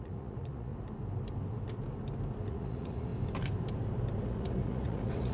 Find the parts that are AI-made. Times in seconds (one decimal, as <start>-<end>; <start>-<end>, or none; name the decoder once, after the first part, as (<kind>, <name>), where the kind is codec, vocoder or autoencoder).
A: 0.0-0.7 (vocoder, Vocos); 2.5-3.1; 4.2-5.3